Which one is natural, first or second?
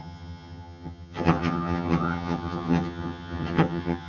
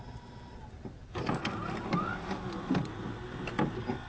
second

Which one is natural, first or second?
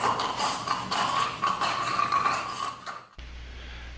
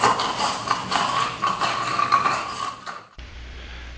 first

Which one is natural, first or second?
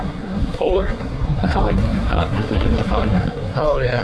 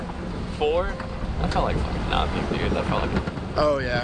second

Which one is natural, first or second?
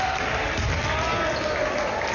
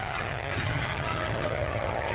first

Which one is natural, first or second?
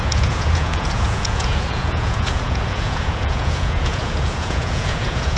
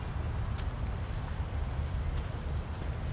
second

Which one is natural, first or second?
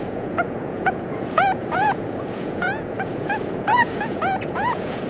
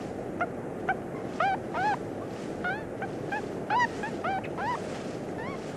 second